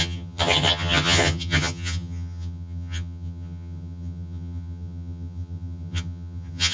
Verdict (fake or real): fake